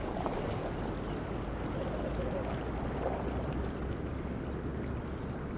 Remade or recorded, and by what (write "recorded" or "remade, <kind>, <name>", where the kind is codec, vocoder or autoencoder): recorded